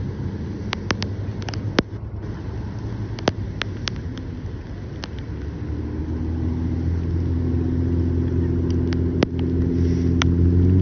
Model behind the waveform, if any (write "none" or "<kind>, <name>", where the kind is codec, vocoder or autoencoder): none